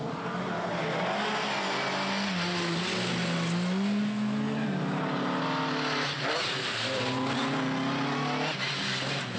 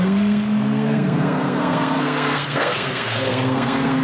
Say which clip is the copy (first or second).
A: second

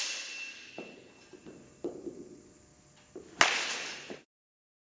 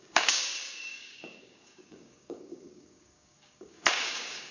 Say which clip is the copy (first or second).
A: second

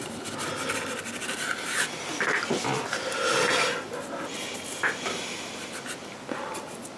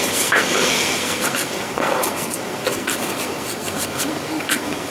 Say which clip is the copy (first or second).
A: second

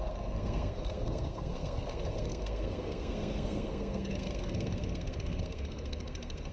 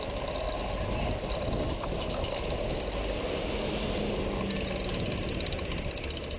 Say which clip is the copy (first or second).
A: first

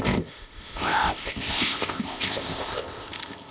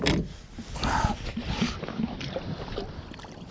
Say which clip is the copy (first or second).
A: first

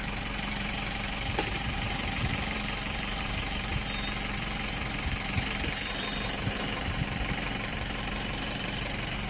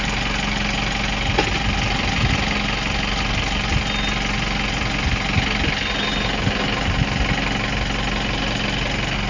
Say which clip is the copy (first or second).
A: first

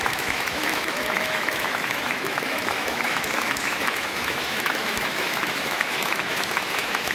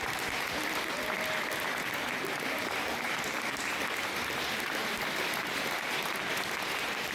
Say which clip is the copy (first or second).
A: first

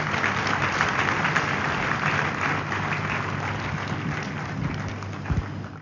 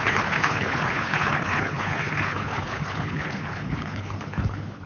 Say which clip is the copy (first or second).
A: second